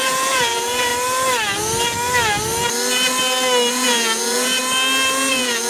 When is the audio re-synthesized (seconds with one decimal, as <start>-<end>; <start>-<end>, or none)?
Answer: 0.0-0.9; 3.7-4.6; 5.3-5.7